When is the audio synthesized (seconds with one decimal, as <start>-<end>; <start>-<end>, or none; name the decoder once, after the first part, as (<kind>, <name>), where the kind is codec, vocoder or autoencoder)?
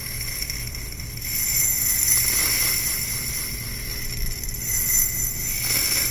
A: 3.9-4.9 (vocoder, BigVGAN v2)